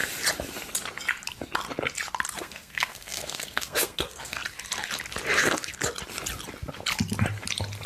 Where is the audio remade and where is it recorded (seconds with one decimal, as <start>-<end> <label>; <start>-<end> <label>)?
0.0-2.4 recorded; 2.4-4.4 remade; 4.4-7.9 recorded